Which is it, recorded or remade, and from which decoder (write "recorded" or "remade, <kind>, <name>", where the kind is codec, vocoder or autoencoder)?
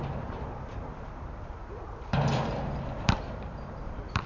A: remade, vocoder, BigVGAN v2